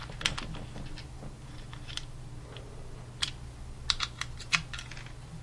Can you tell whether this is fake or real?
real